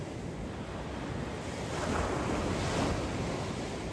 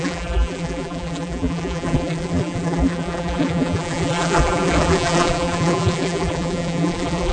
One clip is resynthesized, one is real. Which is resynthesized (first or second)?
second